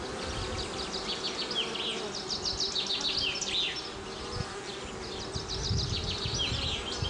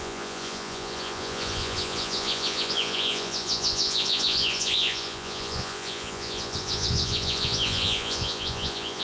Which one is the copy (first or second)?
second